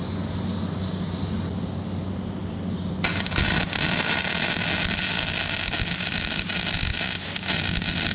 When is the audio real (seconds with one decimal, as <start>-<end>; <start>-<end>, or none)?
0.0-8.1